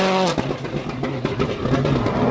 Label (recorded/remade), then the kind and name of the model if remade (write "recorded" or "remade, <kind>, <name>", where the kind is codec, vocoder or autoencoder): recorded